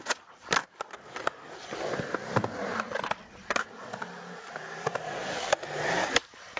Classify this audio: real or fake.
real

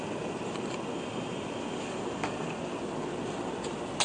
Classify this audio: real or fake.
real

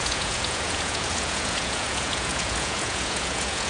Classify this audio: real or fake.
fake